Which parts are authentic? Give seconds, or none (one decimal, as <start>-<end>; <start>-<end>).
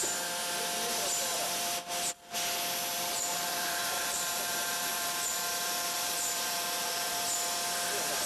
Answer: 0.0-2.9; 7.1-8.3